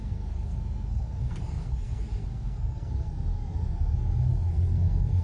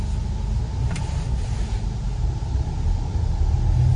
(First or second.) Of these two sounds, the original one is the second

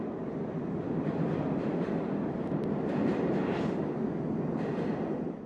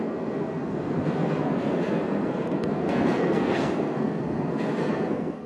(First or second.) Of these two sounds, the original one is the first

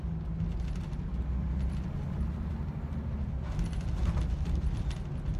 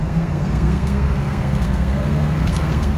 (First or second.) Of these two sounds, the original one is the first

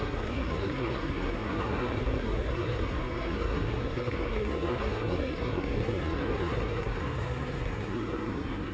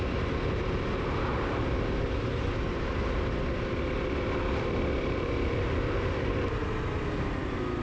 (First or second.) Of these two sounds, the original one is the second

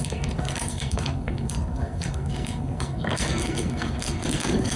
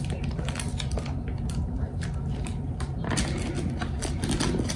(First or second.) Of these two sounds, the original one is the second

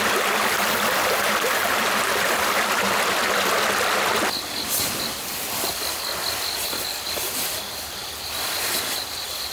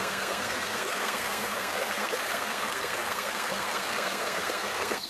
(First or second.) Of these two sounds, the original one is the first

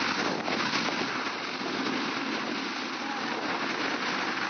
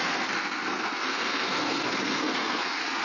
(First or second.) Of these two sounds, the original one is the first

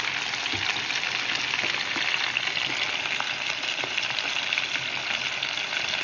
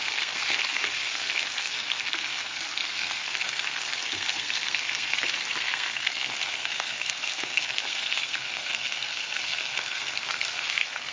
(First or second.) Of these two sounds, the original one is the first